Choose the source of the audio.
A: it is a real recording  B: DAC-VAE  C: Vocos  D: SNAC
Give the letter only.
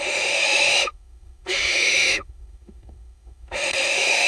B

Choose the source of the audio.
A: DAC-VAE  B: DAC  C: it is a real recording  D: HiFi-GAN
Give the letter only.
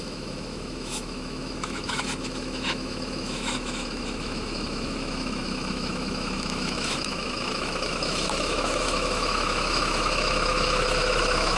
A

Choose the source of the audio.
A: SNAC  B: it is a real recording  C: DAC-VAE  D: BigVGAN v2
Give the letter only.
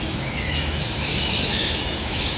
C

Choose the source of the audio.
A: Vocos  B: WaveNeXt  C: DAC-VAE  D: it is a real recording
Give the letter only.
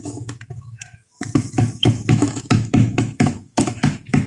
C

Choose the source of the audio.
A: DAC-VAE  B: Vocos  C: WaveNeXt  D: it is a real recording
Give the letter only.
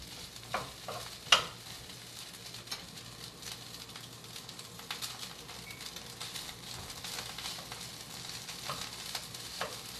D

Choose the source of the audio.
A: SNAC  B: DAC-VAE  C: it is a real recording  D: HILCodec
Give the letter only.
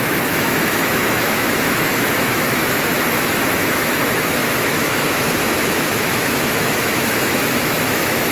B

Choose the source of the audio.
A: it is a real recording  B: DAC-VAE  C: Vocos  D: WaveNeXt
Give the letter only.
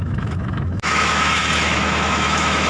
B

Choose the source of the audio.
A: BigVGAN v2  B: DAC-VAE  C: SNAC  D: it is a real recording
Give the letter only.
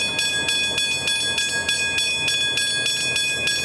D